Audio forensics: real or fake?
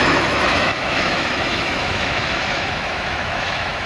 fake